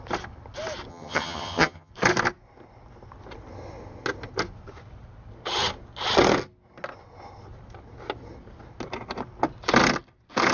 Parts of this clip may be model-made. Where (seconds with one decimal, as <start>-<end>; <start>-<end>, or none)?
0.9-1.9